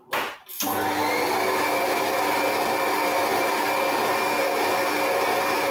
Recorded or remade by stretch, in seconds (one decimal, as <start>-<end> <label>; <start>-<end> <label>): 0.0-5.7 recorded